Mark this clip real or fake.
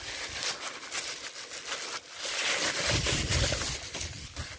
real